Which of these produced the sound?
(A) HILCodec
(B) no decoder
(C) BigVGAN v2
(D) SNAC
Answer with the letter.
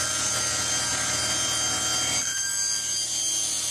B